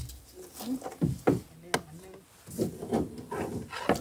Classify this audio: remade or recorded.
recorded